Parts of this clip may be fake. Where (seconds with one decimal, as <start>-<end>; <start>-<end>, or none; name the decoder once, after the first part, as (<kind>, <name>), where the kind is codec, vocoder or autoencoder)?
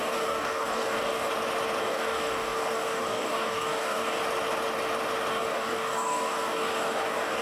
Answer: 0.0-1.3 (codec, DAC); 1.8-4.2; 5.3-7.4